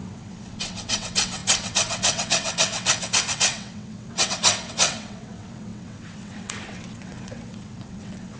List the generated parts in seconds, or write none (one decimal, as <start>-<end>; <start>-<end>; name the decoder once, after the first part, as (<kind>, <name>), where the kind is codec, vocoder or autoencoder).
0.0-8.4 (vocoder, WaveNeXt)